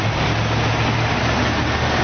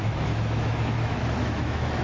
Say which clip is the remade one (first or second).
second